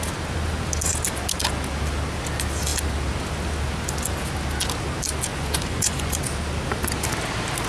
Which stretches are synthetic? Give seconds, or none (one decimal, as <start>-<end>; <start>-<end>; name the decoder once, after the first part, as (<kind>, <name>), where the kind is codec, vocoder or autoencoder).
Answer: 5.3-6.2 (vocoder, Vocos)